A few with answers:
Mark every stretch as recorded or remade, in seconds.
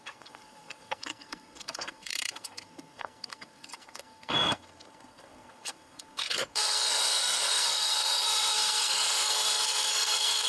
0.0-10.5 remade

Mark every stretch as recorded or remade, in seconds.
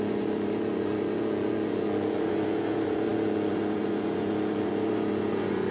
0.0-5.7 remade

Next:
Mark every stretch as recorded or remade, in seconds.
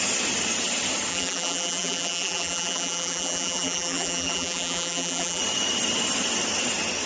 0.0-1.1 recorded; 1.1-5.4 remade; 5.4-7.1 recorded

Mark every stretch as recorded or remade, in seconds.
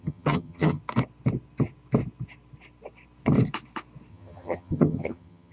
0.0-0.8 remade; 0.8-4.1 recorded; 4.1-5.5 remade